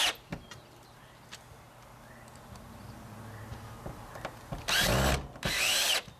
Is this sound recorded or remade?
recorded